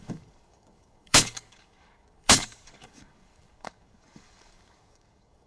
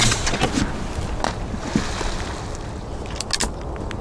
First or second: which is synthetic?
first